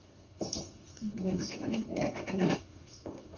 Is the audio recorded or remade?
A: remade